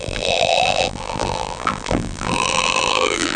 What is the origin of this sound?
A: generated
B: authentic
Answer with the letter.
A